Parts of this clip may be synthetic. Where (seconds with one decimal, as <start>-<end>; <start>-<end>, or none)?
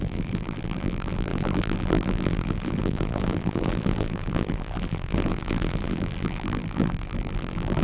0.0-7.8